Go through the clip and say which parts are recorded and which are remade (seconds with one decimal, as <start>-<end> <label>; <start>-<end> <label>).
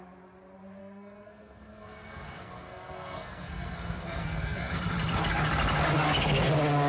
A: 0.0-0.8 recorded; 0.8-4.8 remade; 4.8-6.9 recorded